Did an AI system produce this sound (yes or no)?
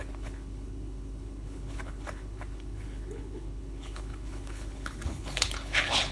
yes